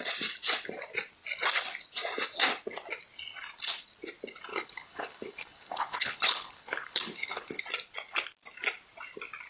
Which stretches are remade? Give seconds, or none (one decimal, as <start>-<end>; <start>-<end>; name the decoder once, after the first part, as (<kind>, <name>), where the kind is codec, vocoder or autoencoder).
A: 4.5-7.6 (codec, HILCodec)